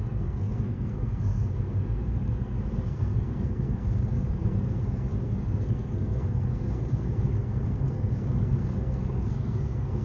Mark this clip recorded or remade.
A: remade